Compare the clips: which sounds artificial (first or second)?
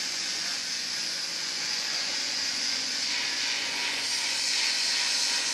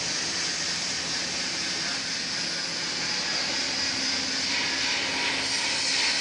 first